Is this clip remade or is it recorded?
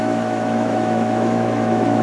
remade